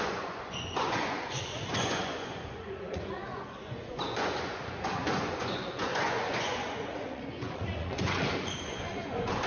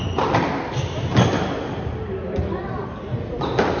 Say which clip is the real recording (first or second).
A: second